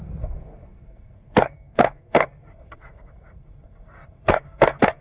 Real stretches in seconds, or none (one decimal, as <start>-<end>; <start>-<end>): none